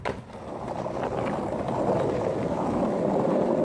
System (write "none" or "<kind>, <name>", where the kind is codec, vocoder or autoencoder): none